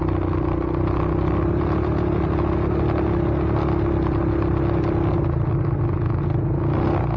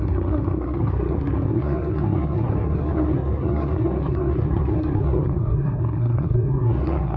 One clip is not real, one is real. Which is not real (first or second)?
second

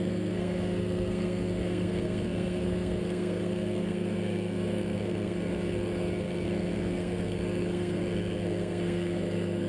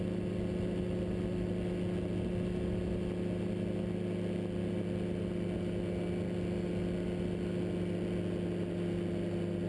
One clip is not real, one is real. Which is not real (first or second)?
first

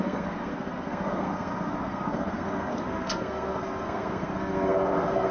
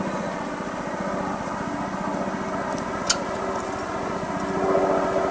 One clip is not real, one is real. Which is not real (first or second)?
first